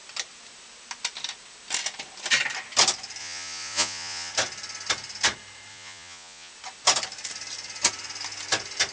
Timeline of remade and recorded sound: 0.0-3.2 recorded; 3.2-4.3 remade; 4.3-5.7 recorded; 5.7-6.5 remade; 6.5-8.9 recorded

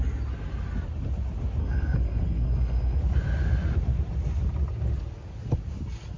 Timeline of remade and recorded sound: 0.0-1.6 recorded; 1.6-3.0 remade; 3.0-6.2 recorded

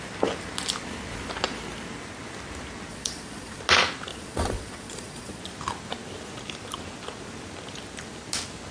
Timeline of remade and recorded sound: 0.0-2.9 recorded; 2.9-3.6 remade; 3.6-4.1 recorded; 4.1-5.4 remade; 5.4-8.7 recorded

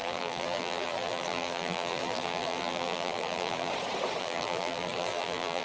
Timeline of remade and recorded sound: 0.0-3.7 remade; 3.7-4.2 recorded; 4.2-5.6 remade